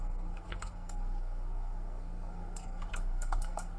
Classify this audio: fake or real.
fake